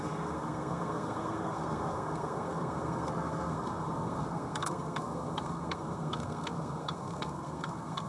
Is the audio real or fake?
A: fake